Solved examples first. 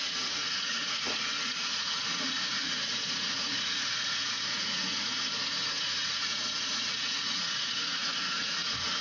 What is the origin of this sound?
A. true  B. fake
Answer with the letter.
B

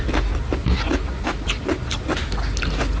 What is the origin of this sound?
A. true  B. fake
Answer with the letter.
A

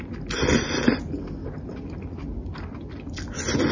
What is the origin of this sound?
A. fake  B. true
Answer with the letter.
B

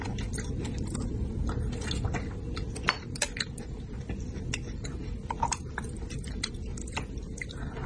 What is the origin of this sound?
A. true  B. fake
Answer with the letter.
A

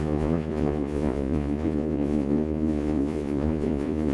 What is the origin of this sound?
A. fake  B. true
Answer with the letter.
A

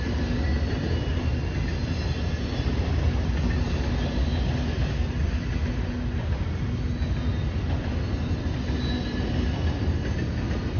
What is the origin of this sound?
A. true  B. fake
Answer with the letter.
A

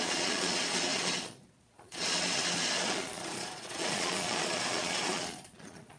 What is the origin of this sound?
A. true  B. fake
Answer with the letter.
B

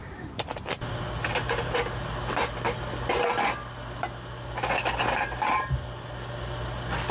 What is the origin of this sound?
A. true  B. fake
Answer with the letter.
A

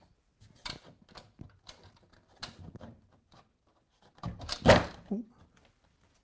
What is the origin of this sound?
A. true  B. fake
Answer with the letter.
A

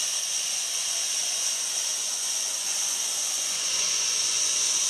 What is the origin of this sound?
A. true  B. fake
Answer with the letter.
B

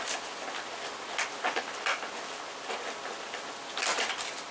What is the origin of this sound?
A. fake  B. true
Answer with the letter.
B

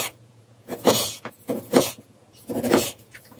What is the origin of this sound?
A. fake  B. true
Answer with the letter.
A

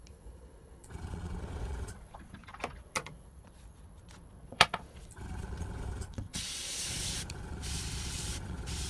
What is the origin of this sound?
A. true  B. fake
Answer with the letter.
B